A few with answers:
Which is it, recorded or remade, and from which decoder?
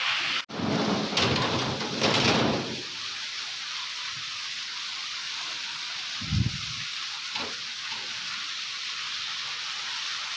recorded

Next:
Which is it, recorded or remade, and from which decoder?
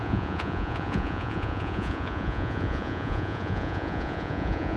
remade, vocoder, Vocos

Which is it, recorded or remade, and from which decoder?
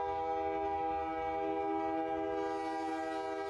recorded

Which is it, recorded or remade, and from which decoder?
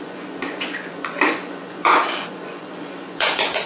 remade, vocoder, Vocos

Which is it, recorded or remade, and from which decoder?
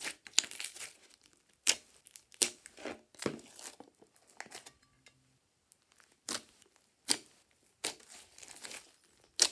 recorded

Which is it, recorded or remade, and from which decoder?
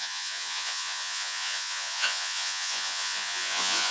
remade, vocoder, Vocos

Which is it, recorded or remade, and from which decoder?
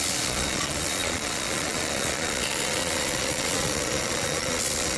remade, vocoder, Vocos